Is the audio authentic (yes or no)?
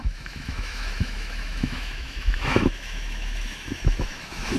no